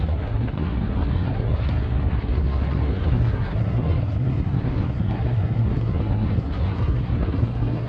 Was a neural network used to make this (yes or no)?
yes